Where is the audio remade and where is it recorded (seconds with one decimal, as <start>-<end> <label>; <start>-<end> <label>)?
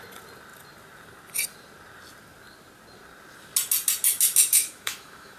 0.0-4.5 recorded; 4.5-5.4 remade